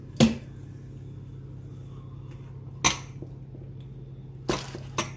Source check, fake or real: real